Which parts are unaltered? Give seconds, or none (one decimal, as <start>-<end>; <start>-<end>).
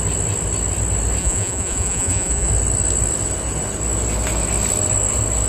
0.0-1.2; 2.5-5.5